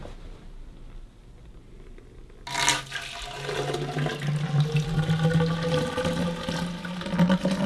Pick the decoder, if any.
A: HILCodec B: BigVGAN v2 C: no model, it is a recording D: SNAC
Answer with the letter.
C